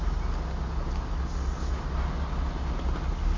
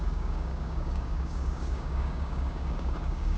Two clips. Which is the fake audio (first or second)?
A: second